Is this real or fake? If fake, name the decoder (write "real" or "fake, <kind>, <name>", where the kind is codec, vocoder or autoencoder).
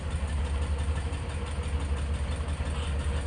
real